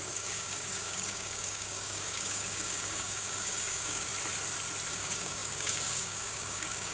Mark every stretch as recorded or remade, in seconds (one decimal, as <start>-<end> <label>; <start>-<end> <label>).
0.0-4.1 remade; 4.1-4.9 recorded; 4.9-6.9 remade